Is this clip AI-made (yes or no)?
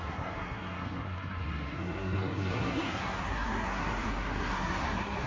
yes